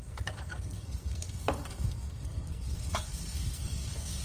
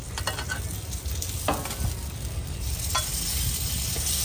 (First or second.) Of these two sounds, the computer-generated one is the first